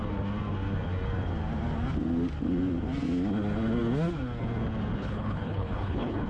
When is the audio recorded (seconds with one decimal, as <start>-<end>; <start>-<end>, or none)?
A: 0.0-5.0